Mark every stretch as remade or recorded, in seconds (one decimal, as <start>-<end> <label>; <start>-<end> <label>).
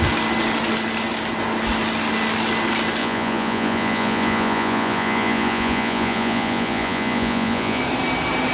0.0-3.0 recorded; 3.0-7.8 remade; 7.8-8.5 recorded